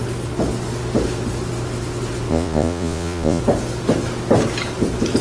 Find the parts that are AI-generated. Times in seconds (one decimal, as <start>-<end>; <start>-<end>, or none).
2.3-3.4